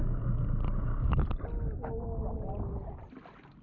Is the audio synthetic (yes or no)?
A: no